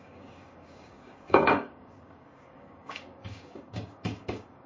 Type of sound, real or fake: fake